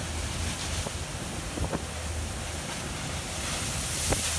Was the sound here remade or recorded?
recorded